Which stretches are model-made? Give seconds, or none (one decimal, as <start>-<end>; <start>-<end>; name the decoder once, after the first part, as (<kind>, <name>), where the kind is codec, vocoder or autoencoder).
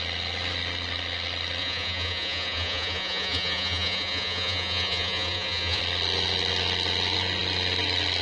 1.6-5.8 (vocoder, Vocos)